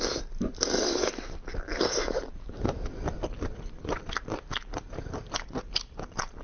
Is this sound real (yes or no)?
yes